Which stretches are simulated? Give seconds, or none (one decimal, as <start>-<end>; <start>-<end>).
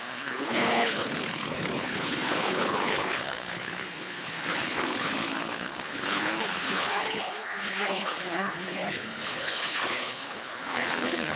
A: 0.0-11.4